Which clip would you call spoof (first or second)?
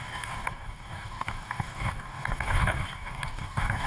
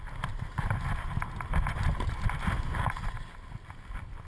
first